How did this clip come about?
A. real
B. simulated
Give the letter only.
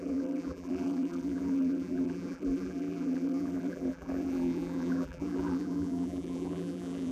B